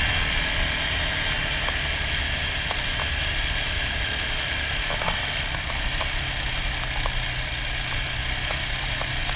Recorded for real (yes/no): yes